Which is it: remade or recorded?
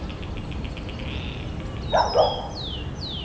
recorded